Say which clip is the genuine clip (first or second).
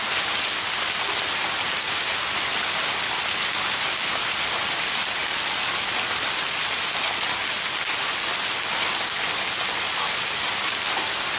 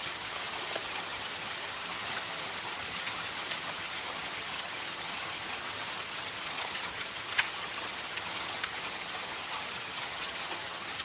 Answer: first